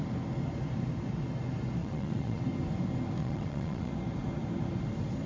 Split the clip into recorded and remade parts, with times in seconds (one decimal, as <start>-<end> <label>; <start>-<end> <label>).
0.0-1.8 recorded; 1.8-2.4 remade; 2.4-3.2 recorded; 3.2-3.9 remade; 3.9-5.3 recorded